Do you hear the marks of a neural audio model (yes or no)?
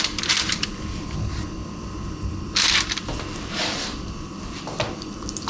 yes